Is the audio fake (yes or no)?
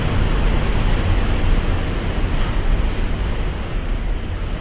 no